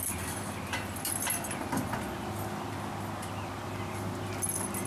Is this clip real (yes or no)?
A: yes